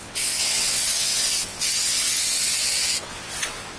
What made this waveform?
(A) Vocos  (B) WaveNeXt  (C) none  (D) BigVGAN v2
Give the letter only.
B